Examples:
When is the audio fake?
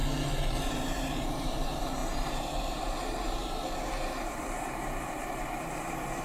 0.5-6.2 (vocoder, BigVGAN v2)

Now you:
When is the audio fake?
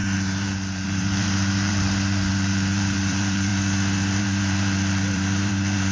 0.0-3.5 (vocoder, BigVGAN v2); 4.2-5.9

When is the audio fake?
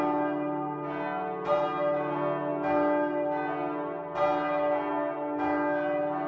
none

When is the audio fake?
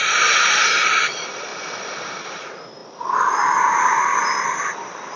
0.0-1.5 (vocoder, BigVGAN v2); 2.2-5.2